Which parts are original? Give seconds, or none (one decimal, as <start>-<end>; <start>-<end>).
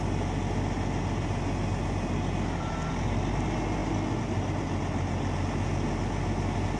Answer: 0.0-6.8